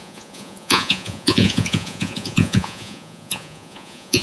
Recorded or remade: remade